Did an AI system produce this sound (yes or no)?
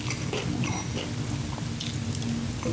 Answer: no